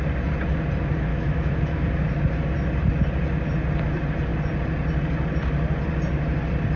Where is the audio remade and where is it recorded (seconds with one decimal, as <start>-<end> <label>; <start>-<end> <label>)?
0.0-1.1 recorded; 1.1-1.8 remade; 1.8-6.8 recorded